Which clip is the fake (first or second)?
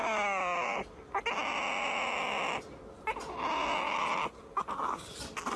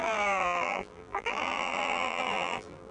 second